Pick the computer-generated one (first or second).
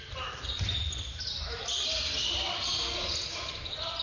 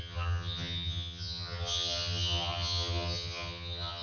second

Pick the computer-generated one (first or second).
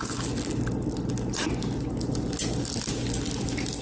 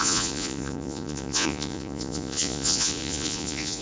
second